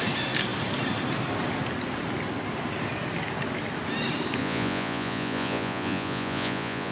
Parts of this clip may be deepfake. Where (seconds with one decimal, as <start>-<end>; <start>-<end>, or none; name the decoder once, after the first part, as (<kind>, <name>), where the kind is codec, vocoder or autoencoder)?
4.4-6.9 (vocoder, Vocos)